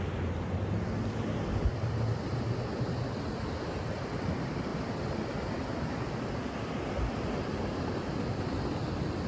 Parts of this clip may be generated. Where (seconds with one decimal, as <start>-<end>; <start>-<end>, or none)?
none